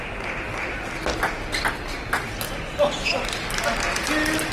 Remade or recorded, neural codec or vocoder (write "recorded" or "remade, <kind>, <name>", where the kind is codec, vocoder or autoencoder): recorded